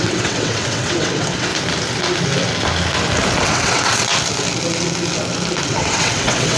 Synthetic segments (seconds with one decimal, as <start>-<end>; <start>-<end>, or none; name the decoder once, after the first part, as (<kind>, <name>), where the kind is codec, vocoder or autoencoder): 0.0-1.5 (vocoder, WaveNeXt); 3.4-4.1; 5.7-6.6